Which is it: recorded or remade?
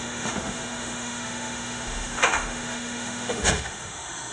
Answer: remade